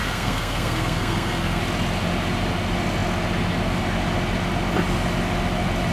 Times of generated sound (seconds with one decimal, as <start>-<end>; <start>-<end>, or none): 0.0-1.6